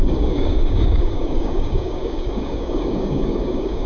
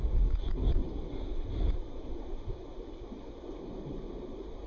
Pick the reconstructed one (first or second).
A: first